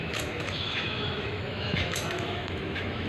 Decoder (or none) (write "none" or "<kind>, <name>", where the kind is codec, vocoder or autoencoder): autoencoder, DAC-VAE